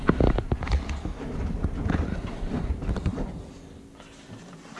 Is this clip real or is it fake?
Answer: real